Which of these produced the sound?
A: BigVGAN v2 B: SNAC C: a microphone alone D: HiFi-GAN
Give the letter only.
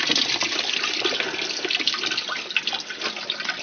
C